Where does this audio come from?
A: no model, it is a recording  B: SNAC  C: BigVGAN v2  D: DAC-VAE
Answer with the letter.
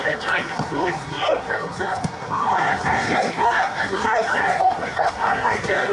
B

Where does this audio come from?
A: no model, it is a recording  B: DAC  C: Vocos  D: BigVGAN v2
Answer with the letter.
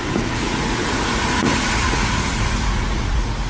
C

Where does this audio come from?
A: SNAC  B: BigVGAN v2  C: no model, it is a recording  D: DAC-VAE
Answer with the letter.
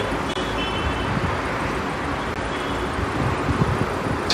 C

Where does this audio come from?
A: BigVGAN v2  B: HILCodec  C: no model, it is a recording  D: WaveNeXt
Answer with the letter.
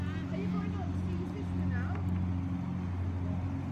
C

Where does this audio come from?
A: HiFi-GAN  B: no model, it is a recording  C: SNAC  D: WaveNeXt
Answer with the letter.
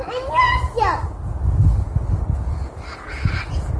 B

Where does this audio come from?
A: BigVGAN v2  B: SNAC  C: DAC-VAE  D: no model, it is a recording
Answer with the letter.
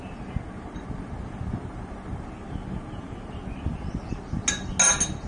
D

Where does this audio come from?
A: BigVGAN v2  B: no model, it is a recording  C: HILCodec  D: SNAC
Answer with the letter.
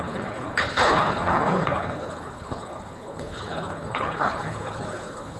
C